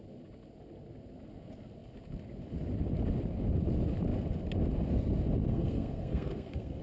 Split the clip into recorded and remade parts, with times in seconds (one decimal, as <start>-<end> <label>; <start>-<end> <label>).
0.0-5.5 recorded; 5.5-6.8 remade